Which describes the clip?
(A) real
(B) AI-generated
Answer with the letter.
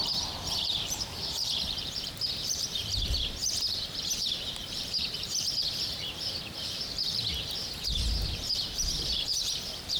B